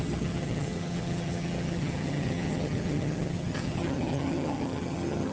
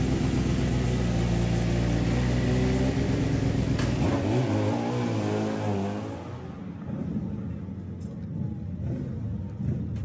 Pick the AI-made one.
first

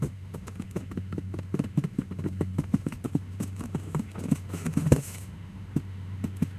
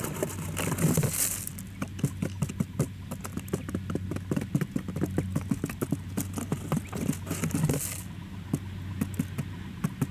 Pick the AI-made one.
first